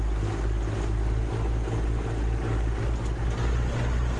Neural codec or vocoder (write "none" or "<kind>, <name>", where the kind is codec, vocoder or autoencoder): none